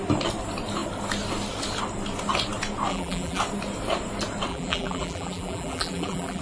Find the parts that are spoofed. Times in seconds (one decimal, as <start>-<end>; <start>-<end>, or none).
2.9-3.4; 4.5-6.4